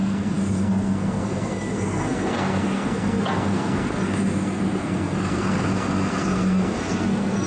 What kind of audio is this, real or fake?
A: fake